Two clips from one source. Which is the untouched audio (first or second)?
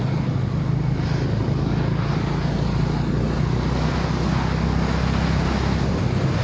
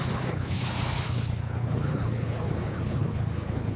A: first